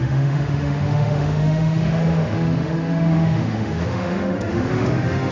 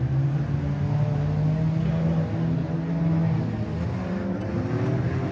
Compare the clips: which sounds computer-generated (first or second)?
first